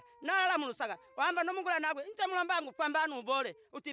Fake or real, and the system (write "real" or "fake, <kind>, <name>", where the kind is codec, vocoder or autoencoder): real